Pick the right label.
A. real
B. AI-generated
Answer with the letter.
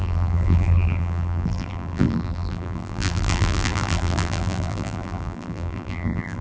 B